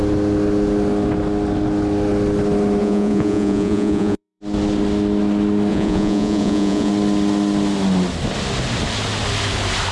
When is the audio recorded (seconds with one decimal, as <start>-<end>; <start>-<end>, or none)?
0.0-2.8; 4.4-5.7; 6.9-9.9